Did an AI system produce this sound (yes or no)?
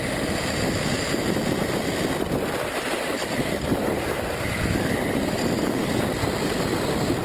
no